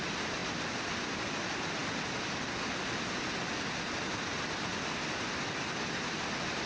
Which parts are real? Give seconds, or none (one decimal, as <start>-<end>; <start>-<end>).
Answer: 0.0-6.7